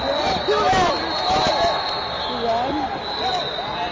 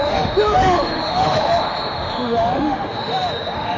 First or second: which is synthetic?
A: second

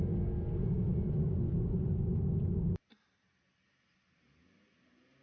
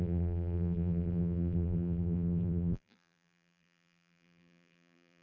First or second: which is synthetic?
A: second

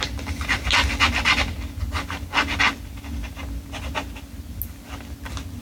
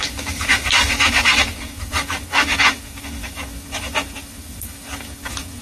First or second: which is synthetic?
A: second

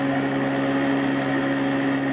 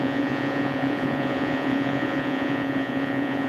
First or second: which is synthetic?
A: second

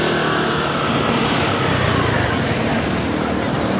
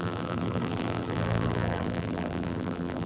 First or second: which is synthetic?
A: second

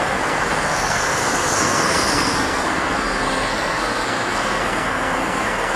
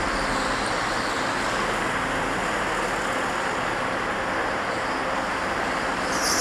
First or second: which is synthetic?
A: first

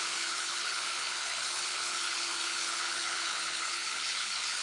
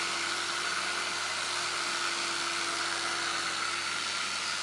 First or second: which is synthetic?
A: first